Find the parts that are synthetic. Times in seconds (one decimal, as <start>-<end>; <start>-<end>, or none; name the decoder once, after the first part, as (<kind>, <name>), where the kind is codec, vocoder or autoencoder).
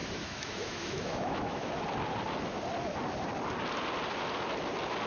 0.0-1.7 (autoencoder, DAC-VAE)